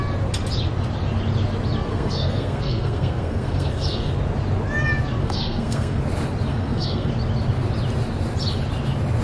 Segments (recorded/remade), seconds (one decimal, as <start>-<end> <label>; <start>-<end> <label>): 0.0-1.9 recorded; 1.9-4.1 remade; 4.1-5.2 recorded; 5.2-6.0 remade; 6.0-6.5 recorded; 6.5-7.1 remade; 7.1-9.2 recorded